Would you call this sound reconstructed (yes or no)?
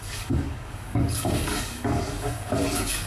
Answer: yes